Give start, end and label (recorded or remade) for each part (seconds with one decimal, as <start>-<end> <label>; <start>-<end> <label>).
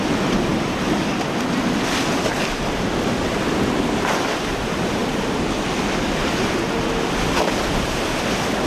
0.0-8.7 recorded